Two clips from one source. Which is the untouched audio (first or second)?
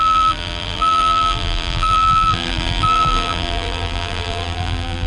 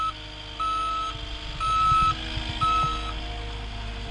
second